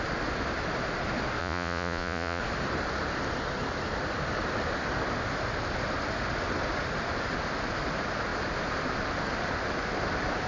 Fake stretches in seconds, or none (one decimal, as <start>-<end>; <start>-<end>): 1.4-2.4